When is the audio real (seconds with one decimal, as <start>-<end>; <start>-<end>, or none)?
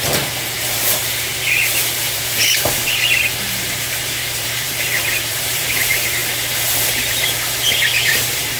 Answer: 1.0-2.0; 2.8-3.4; 6.2-8.0